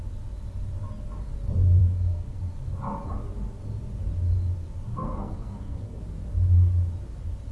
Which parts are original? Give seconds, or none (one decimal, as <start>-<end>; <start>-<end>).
0.0-1.8; 2.4-4.9; 6.0-7.5